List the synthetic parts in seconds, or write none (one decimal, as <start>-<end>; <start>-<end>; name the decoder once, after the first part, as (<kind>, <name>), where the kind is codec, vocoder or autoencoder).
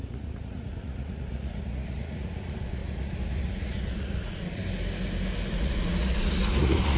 0.0-4.6 (vocoder, Vocos); 5.5-7.0